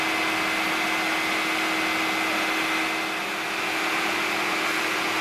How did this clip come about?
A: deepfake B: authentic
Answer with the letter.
B